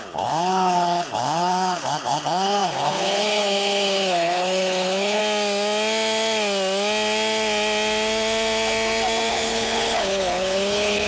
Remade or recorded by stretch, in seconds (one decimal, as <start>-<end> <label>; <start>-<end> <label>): 0.0-5.2 remade; 5.2-9.3 recorded; 9.3-11.1 remade